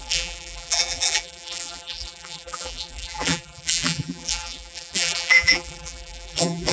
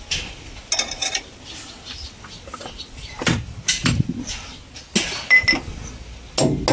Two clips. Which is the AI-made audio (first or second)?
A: first